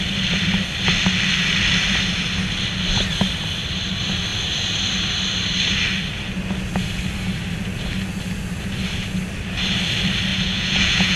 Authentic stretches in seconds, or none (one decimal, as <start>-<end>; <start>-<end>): 0.0-10.3